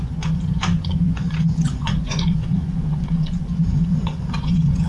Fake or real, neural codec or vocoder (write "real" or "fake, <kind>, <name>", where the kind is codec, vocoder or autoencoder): fake, vocoder, Vocos